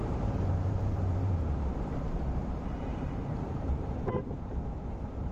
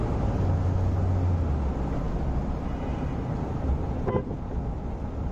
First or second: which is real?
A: second